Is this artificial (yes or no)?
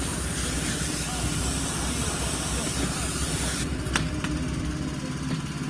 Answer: no